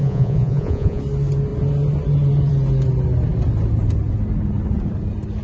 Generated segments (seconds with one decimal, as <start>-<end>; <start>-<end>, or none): 0.0-1.0